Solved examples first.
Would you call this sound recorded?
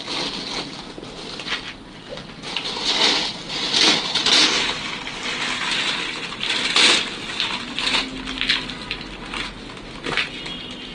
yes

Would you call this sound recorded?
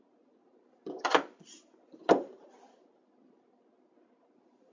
yes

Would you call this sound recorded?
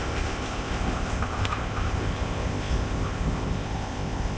no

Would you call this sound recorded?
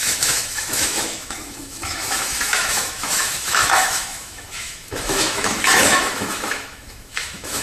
no